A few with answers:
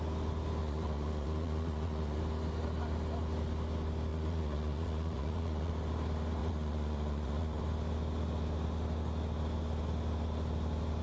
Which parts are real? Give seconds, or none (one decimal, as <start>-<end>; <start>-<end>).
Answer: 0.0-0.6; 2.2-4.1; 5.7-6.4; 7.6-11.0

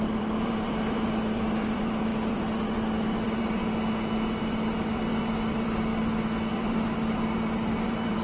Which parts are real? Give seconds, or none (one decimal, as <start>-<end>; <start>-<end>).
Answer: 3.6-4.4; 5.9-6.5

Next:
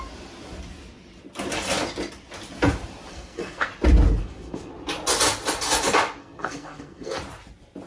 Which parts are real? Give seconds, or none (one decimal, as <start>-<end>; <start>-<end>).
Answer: 0.0-3.1; 3.7-4.2; 4.7-6.2; 7.2-7.9

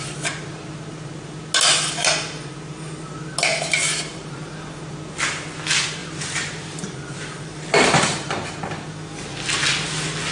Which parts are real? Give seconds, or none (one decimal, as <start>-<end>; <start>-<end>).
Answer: 0.0-3.5; 4.4-6.0; 8.5-10.3

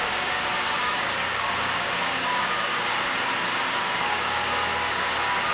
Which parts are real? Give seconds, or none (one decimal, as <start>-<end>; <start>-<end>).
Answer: 2.9-3.8

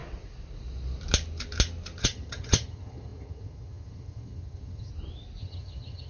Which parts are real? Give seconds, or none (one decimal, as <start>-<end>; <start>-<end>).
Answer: 0.0-2.0; 4.9-5.4

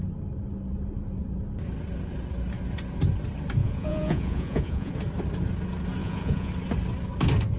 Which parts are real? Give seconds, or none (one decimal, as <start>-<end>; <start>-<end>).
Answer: 0.0-3.6; 4.9-6.0; 6.5-7.6